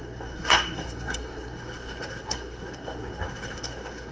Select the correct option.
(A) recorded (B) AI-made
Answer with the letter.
B